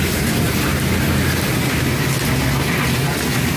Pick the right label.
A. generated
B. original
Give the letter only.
B